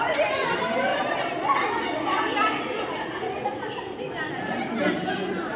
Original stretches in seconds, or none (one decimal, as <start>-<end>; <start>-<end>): 0.0-5.6